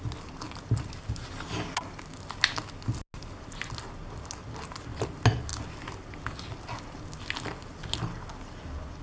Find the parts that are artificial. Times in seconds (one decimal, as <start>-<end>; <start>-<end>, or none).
none